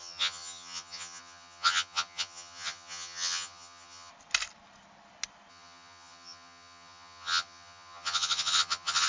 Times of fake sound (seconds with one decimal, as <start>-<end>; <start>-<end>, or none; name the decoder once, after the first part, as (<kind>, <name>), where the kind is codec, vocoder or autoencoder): 0.0-4.1 (vocoder, HiFi-GAN); 5.5-9.1